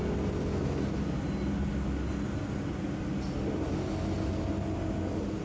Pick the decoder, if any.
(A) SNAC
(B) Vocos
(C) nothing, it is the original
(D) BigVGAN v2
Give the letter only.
C